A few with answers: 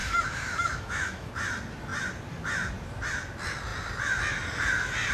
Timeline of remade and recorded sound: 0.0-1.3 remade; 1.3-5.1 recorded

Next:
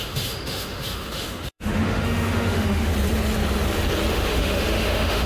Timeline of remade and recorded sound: 0.0-2.9 remade; 2.9-4.1 recorded; 4.1-5.3 remade